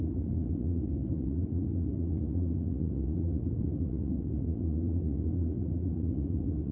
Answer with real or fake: fake